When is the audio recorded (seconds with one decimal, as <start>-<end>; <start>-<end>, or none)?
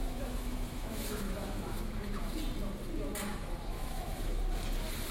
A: 2.3-3.3; 4.4-5.1